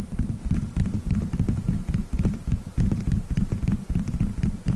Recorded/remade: recorded